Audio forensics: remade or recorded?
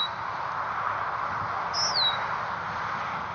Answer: recorded